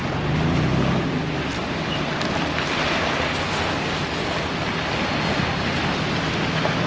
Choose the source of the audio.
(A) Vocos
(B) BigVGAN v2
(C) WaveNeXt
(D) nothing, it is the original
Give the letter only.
D